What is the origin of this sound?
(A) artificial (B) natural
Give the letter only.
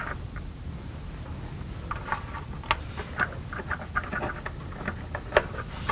B